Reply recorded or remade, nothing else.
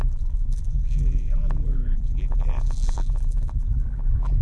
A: remade